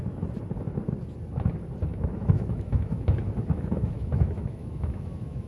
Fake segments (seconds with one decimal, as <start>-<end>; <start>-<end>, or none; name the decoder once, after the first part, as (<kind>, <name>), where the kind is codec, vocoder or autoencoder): 1.9-5.5 (autoencoder, DAC-VAE)